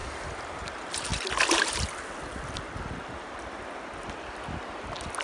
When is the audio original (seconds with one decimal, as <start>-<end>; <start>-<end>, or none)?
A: 0.0-0.7; 1.1-4.2